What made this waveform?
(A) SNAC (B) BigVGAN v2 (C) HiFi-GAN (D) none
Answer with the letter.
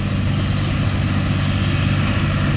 D